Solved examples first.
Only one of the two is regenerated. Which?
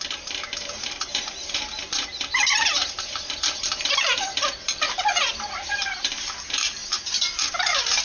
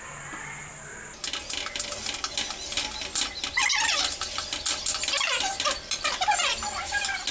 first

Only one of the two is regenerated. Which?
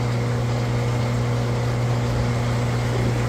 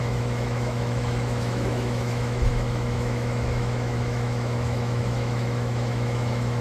second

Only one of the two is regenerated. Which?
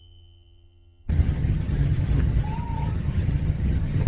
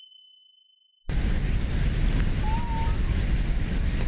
first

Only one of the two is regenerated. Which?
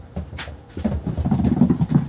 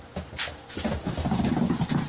first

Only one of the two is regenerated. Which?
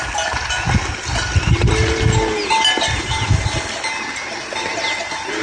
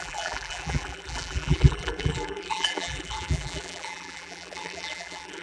second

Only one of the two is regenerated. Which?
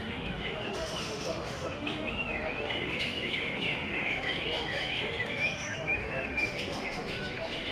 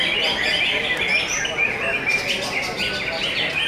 first